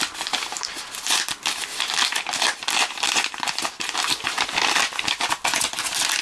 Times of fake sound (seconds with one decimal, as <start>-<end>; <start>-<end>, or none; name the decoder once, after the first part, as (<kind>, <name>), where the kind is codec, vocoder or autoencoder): none

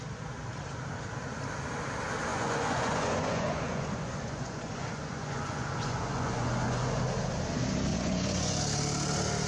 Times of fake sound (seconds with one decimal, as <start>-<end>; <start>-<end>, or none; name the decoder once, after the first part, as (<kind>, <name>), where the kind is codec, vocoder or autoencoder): 2.3-7.0 (vocoder, Vocos); 7.9-8.6

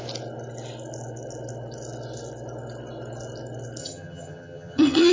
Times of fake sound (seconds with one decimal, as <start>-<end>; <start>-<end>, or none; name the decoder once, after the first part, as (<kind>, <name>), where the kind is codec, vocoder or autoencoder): 3.8-5.1 (vocoder, HiFi-GAN)

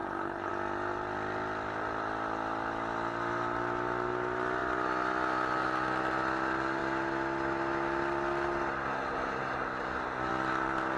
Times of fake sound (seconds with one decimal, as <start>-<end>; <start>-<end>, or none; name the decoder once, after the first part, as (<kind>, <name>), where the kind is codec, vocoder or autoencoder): 0.0-0.5 (codec, HILCodec)

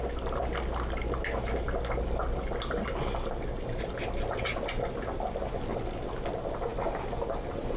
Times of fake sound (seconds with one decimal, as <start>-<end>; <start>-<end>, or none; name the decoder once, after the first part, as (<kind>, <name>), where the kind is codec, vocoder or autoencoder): none